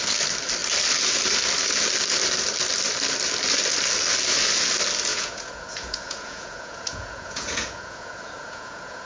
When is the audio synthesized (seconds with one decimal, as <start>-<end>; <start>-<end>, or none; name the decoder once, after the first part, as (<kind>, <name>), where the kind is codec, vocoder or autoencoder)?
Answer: 5.1-9.1 (vocoder, Vocos)

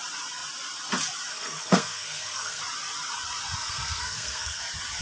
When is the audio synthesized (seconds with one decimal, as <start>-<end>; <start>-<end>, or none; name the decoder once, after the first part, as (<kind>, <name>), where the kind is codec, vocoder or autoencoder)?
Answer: 1.3-2.6 (codec, SNAC); 3.6-4.6

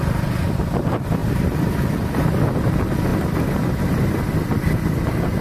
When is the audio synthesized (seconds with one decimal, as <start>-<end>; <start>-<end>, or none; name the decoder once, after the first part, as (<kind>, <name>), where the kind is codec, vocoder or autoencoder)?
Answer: none

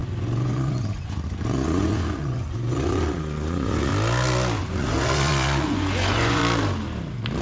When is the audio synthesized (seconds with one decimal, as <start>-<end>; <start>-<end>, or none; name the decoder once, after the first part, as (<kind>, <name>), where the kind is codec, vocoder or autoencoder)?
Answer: 0.0-3.9 (vocoder, Vocos); 4.6-6.4

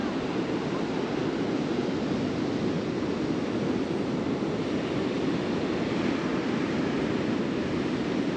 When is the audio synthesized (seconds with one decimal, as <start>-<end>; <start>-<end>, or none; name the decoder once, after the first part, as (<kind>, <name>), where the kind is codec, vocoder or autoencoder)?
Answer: 0.0-0.7 (vocoder, BigVGAN v2); 6.3-7.4

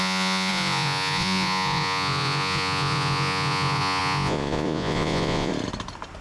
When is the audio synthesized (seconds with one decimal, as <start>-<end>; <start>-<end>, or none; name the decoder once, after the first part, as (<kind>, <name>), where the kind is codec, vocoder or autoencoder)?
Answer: 0.0-5.5 (vocoder, Vocos)

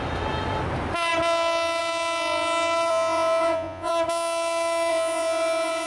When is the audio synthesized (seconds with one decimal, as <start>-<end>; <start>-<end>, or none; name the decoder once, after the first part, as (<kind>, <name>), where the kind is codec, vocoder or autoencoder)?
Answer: 2.9-3.9 (vocoder, Vocos); 4.9-5.9